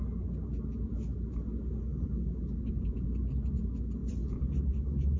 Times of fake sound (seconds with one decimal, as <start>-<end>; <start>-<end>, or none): 4.0-4.5